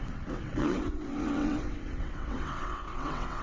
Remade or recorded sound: remade